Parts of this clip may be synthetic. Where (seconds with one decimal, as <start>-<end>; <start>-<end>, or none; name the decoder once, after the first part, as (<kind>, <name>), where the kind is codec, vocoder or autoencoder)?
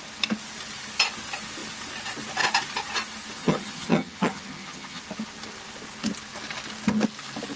3.4-5.0 (vocoder, HiFi-GAN)